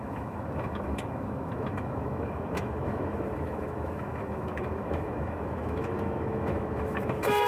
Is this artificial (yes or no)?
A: yes